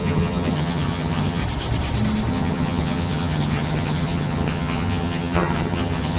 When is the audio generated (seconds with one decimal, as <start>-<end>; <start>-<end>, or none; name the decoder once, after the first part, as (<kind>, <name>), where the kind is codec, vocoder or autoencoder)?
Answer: 0.0-1.4 (vocoder, HiFi-GAN); 2.3-6.2

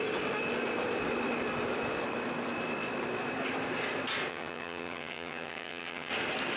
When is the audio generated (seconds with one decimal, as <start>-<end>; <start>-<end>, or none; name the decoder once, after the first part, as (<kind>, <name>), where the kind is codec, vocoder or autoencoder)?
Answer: 4.3-6.1 (vocoder, HiFi-GAN)

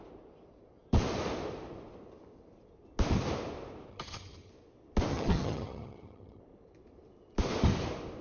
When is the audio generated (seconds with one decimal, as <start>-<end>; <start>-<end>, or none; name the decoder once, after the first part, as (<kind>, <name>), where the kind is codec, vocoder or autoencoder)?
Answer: 3.9-4.5 (vocoder, HiFi-GAN); 5.1-6.4

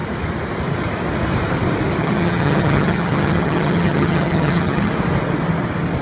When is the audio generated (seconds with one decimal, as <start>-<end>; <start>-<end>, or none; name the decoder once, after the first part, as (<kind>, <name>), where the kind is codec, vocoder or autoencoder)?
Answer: 2.0-4.9 (vocoder, HiFi-GAN)

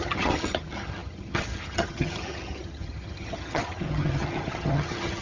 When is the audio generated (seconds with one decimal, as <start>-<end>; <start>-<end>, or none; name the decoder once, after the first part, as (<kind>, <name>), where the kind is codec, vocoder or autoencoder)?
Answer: 0.0-5.2 (vocoder, HiFi-GAN)

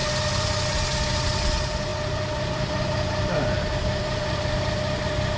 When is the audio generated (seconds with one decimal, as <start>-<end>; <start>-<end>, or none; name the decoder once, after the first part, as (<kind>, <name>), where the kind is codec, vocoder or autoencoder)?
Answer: none